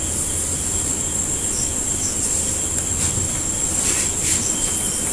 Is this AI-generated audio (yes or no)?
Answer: no